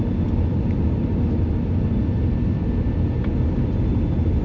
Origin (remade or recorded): recorded